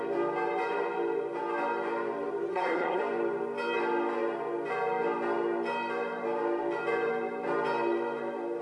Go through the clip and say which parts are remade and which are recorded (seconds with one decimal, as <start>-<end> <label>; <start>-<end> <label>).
0.0-2.5 recorded; 2.5-3.0 remade; 3.0-8.6 recorded